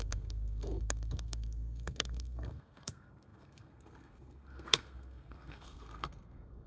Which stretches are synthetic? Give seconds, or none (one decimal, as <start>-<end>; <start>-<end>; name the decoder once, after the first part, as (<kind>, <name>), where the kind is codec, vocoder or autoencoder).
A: 0.0-6.7 (codec, SNAC)